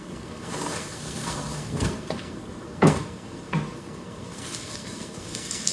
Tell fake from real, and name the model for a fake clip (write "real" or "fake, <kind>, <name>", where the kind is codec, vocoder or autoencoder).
fake, codec, SNAC